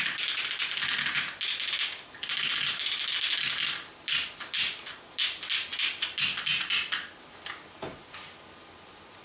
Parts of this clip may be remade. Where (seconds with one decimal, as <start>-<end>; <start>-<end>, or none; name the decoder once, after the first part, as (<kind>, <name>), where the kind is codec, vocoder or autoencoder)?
none